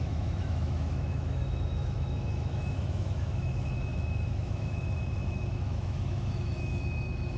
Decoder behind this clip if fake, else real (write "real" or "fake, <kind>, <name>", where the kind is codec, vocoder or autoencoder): fake, autoencoder, DAC-VAE